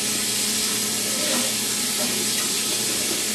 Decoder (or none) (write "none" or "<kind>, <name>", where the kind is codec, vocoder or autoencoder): none